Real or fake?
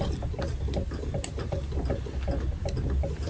real